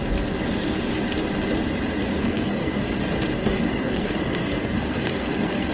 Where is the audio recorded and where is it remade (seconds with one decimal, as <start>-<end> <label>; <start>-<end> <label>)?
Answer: 0.0-2.2 recorded; 2.2-3.0 remade; 3.0-3.4 recorded; 3.4-5.7 remade